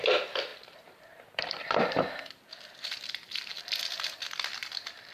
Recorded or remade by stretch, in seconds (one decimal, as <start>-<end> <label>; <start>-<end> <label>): 0.0-0.5 recorded; 0.5-3.6 remade; 3.6-5.1 recorded